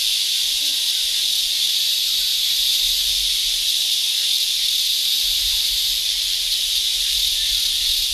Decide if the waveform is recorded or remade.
recorded